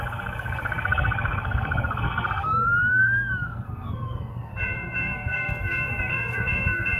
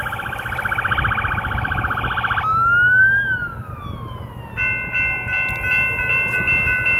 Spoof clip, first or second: first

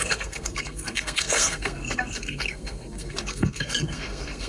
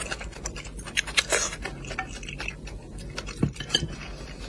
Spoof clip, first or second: first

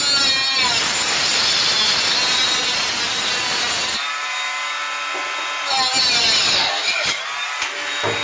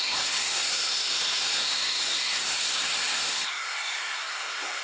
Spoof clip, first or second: second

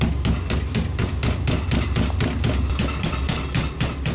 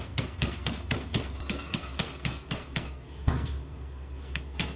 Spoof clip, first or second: second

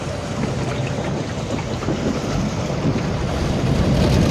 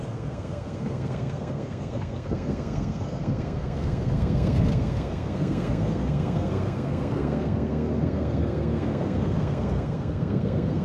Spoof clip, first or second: second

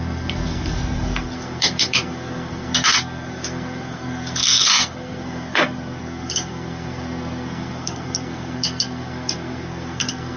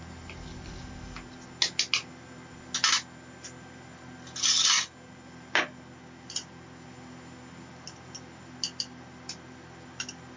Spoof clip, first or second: first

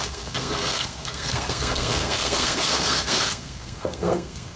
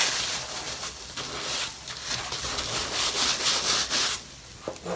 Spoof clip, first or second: first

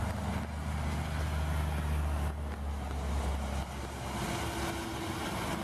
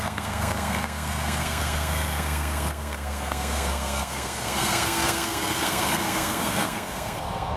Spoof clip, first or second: second